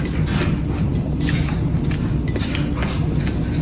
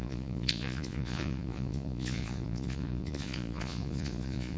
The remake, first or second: second